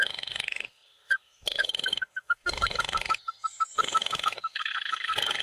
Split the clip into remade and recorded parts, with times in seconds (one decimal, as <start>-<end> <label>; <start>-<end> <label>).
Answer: 0.0-5.4 remade